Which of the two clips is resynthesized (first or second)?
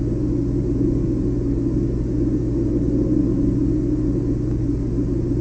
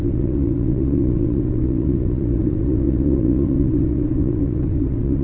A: second